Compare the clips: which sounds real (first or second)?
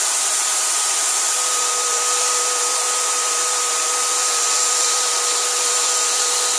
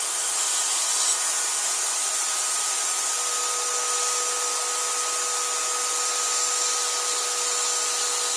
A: second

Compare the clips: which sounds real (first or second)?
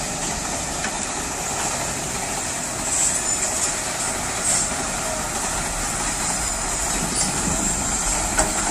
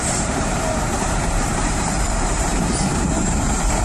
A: first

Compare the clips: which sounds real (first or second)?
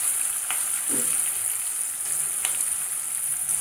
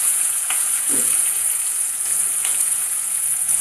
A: first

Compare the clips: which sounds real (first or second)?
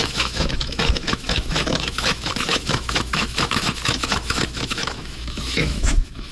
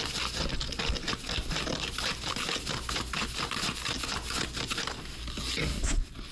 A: second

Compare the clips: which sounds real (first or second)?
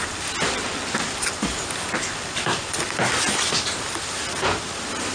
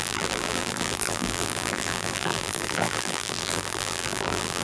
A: first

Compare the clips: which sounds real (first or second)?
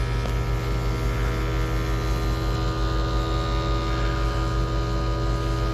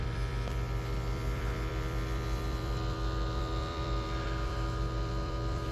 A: first